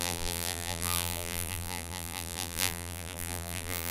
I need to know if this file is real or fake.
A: fake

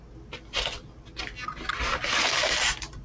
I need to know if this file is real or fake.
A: real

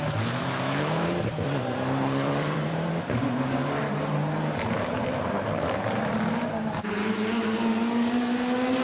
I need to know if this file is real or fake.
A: fake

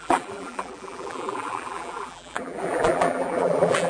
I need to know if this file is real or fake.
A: fake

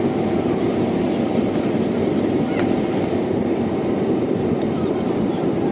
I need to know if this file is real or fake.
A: real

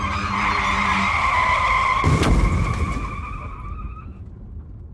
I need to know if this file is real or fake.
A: real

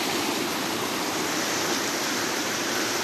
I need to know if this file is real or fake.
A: fake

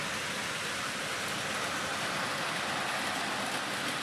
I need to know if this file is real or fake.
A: real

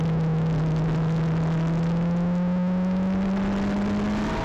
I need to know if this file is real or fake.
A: real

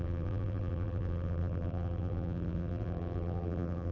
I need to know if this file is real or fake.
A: fake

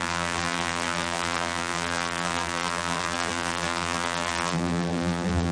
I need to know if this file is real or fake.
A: fake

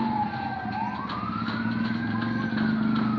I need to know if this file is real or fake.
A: real